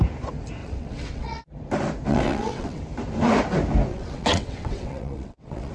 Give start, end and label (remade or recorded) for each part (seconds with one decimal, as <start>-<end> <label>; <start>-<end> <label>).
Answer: 0.0-0.6 recorded; 0.6-1.4 remade; 1.4-2.1 recorded; 2.1-2.8 remade; 2.8-3.9 recorded; 3.9-5.7 remade